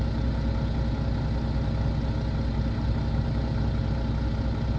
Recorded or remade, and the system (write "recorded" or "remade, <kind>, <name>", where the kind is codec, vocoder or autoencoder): recorded